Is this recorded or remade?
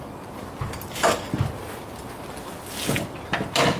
recorded